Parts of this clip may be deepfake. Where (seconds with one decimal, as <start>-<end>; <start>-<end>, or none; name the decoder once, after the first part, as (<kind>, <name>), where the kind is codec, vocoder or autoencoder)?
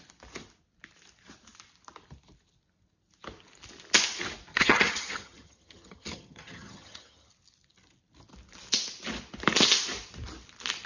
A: 4.5-7.3 (vocoder, HiFi-GAN)